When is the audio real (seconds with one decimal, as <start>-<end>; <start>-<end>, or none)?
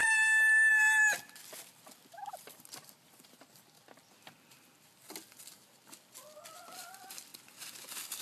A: 0.0-7.3